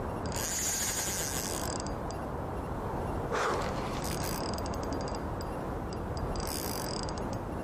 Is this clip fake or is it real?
real